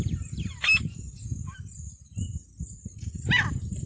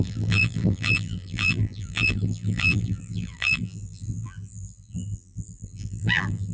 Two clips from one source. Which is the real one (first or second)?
first